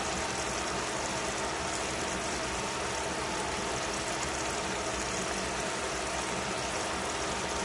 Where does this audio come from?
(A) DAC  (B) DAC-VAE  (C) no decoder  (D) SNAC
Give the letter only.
C